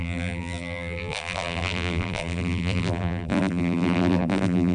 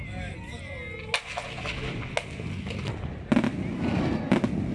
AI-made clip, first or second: first